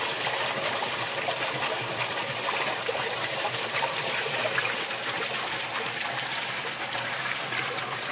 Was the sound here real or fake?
real